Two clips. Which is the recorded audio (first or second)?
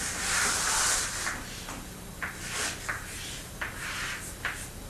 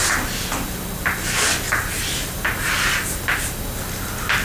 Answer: second